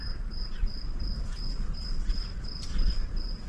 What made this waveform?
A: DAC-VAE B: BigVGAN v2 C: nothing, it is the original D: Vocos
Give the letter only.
C